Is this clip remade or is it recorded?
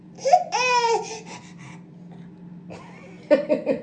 recorded